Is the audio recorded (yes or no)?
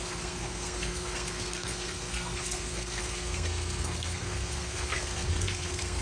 no